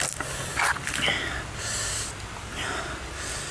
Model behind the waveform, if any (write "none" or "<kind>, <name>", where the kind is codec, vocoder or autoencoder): none